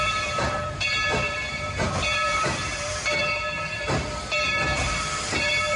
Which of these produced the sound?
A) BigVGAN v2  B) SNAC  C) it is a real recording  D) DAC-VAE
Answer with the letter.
A